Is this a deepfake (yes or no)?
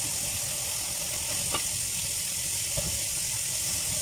no